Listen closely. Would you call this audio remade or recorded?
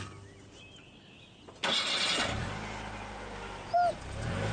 recorded